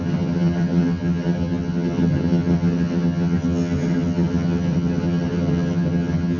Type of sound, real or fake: fake